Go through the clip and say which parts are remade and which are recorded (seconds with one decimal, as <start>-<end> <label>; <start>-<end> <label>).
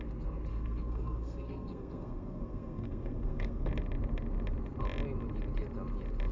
0.0-0.5 recorded; 0.5-3.7 remade; 3.7-6.3 recorded